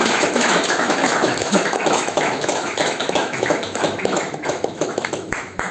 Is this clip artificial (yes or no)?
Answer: yes